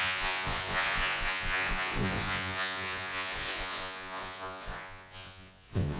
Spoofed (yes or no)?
yes